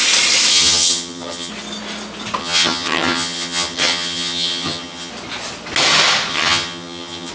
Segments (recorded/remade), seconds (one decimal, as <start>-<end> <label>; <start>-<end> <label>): 0.0-0.5 recorded; 0.5-1.5 remade; 1.5-2.4 recorded; 2.4-5.1 remade; 5.1-6.3 recorded; 6.3-7.3 remade